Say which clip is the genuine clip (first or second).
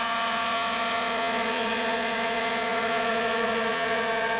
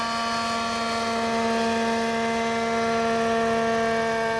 second